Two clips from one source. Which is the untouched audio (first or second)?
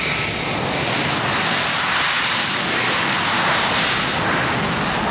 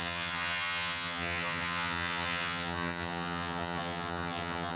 first